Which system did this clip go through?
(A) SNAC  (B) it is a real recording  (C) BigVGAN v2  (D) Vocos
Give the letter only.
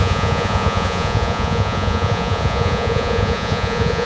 D